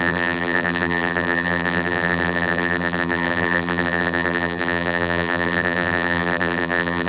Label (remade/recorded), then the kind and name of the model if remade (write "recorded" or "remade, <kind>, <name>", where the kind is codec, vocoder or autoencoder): remade, vocoder, BigVGAN v2